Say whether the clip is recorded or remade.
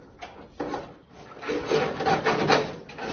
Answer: recorded